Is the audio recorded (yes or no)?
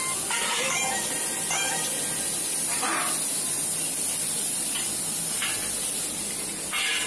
yes